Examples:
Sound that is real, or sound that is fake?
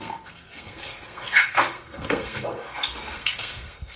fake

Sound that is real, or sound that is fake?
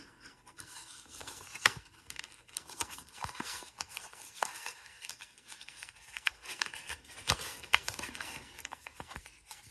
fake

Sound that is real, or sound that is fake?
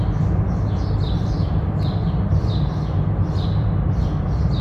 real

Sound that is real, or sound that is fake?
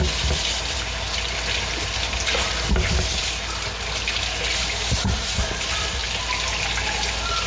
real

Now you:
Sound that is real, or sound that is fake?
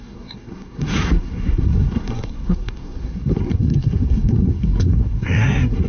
fake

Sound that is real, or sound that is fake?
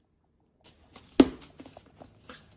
real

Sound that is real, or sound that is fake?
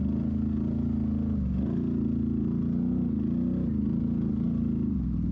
real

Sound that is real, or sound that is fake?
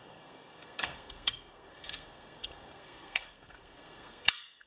fake